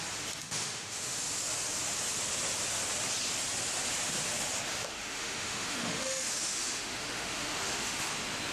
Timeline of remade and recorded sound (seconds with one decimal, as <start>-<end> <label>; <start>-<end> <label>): 0.0-0.4 recorded; 0.4-1.2 remade; 1.2-4.7 recorded; 4.7-8.1 remade; 8.1-8.5 recorded